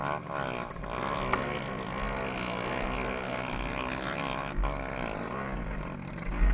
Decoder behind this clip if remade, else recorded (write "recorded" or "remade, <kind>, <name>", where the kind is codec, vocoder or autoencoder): recorded